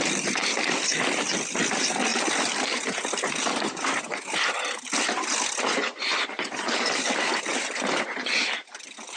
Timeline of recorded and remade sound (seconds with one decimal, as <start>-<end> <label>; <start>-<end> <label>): 0.0-5.7 recorded; 5.7-6.4 remade; 6.4-9.2 recorded